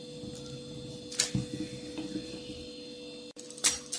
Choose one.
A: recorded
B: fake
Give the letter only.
A